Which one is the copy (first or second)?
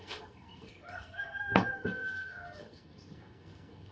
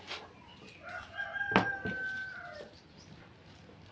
first